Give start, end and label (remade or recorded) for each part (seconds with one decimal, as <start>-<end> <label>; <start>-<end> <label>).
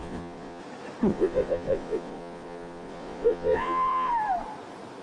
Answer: 0.0-0.6 remade; 0.6-1.1 recorded; 1.1-4.1 remade; 4.1-5.0 recorded